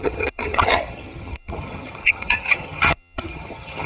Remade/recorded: remade